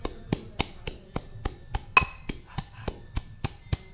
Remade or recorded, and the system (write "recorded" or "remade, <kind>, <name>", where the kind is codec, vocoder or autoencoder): recorded